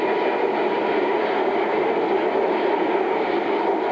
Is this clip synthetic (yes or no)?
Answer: no